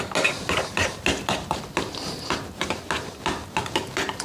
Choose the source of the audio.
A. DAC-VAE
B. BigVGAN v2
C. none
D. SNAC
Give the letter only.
C